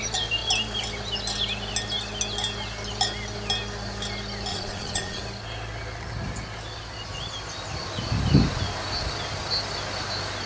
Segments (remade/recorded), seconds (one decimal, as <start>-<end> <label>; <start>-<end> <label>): 0.0-4.5 recorded; 4.5-5.2 remade; 5.2-10.5 recorded